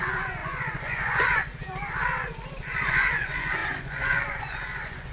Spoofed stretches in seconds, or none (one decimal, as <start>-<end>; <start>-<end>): 0.0-1.4; 2.5-5.1